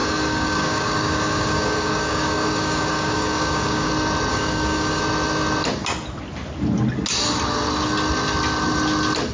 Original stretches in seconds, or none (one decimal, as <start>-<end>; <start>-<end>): 3.9-4.3; 5.0-9.3